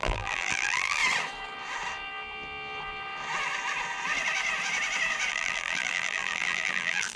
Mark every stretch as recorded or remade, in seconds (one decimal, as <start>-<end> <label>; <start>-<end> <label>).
0.0-1.0 remade; 1.0-5.3 recorded; 5.3-7.2 remade